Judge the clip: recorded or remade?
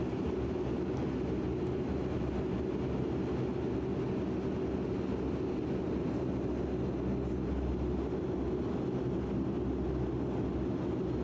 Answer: recorded